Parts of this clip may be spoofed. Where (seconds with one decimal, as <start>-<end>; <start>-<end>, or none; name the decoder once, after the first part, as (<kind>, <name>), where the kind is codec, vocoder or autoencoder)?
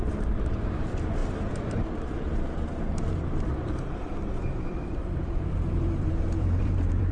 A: 0.0-7.1 (vocoder, BigVGAN v2)